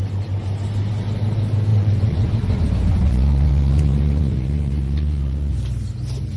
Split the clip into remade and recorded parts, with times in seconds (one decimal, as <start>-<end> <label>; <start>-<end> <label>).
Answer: 0.0-1.7 recorded; 1.7-5.5 remade; 5.5-6.4 recorded